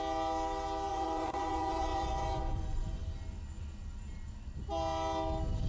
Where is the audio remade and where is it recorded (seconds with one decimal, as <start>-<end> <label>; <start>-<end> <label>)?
0.0-0.9 recorded; 0.9-3.0 remade; 3.0-5.7 recorded